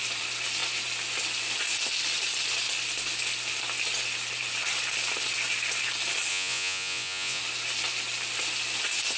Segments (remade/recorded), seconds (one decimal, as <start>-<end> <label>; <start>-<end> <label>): 0.0-6.3 recorded; 6.3-7.4 remade; 7.4-9.2 recorded